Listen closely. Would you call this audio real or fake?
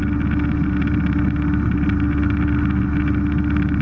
real